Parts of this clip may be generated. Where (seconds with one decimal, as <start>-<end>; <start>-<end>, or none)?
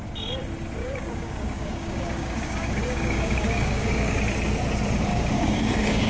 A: 0.8-4.2; 5.1-6.1